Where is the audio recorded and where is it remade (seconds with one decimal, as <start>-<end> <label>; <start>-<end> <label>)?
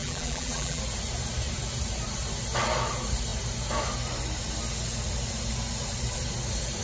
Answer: 0.0-0.8 remade; 0.8-6.8 recorded